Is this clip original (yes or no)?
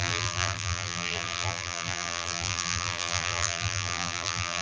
no